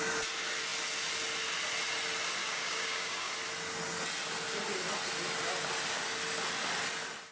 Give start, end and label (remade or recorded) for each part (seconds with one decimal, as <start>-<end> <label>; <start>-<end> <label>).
0.0-2.4 recorded; 2.4-3.3 remade; 3.3-7.3 recorded